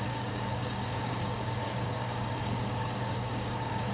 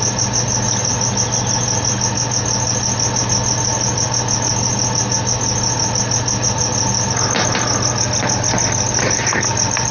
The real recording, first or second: second